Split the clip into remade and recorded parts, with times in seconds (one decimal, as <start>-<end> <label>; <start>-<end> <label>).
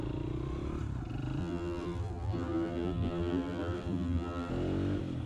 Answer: 0.0-1.4 recorded; 1.4-4.5 remade; 4.5-5.3 recorded